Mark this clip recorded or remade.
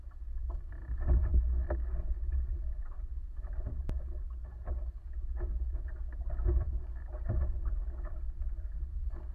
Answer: recorded